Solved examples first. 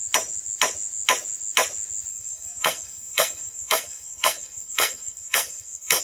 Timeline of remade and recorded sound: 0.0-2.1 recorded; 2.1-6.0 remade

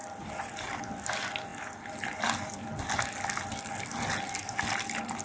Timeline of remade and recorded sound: 0.0-5.2 recorded

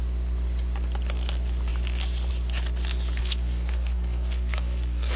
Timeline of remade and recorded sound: 0.0-3.2 recorded; 3.2-5.2 remade

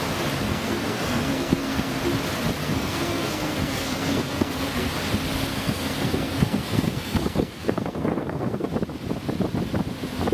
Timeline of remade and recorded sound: 0.0-0.4 recorded; 0.4-2.0 remade; 2.0-2.6 recorded; 2.6-4.9 remade; 4.9-5.5 recorded; 5.5-8.7 remade; 8.7-10.3 recorded

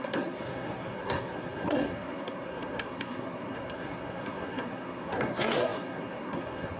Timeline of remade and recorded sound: 0.0-6.8 remade